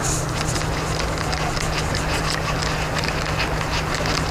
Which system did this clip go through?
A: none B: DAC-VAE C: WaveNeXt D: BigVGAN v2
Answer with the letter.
A